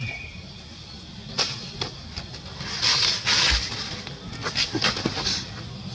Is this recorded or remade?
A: recorded